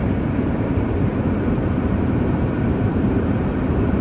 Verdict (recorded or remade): remade